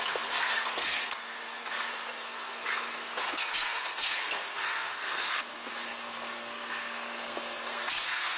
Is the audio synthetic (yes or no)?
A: yes